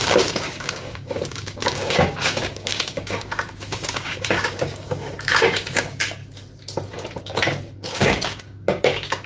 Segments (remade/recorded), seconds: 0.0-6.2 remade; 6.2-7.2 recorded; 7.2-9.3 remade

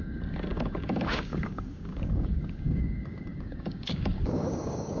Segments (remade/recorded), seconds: 0.0-5.0 remade

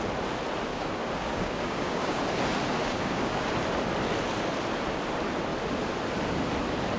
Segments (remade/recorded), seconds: 0.0-0.7 recorded; 0.7-2.2 remade; 2.2-2.8 recorded; 2.8-3.4 remade; 3.4-7.0 recorded